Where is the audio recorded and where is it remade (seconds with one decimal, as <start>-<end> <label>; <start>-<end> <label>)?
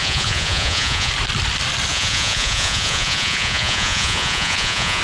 0.0-1.1 remade; 1.1-1.9 recorded; 1.9-5.0 remade